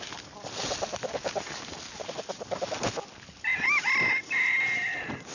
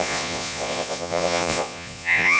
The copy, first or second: second